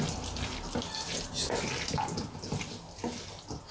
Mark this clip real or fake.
real